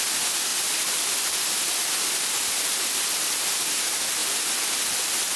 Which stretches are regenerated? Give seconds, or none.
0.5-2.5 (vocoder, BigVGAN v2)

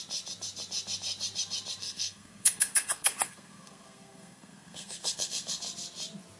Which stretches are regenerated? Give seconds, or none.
1.8-5.6 (codec, SNAC)